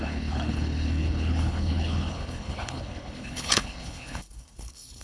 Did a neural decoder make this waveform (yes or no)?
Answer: yes